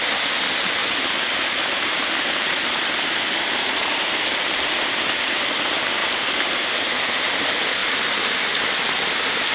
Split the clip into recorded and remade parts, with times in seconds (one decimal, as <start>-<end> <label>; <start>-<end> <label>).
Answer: 0.0-0.8 recorded; 0.8-4.7 remade; 4.7-6.0 recorded; 6.0-7.3 remade; 7.3-9.5 recorded